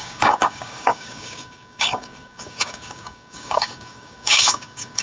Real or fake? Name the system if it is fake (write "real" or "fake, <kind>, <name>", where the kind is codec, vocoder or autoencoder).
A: fake, codec, DAC